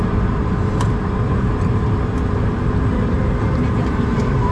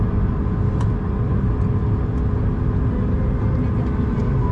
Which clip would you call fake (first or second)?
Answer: first